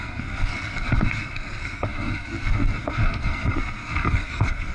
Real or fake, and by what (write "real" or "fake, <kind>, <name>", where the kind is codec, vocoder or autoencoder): fake, codec, SNAC